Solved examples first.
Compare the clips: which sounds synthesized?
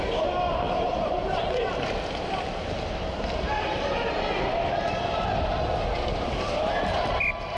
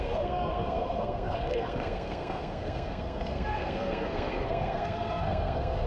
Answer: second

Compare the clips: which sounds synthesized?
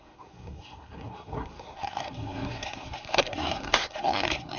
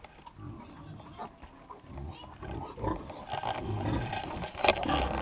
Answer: first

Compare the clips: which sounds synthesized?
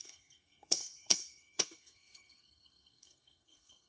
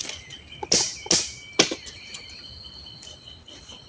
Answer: first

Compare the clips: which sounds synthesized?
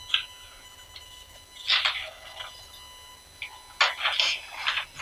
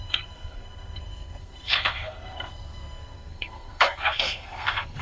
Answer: second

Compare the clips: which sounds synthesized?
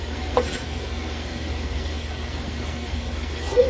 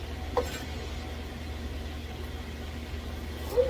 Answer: first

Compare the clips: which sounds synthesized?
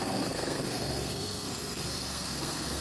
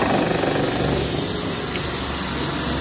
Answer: first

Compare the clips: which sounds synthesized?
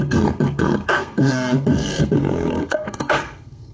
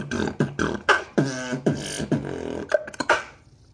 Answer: first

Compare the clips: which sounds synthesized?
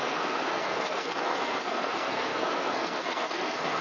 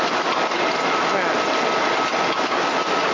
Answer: first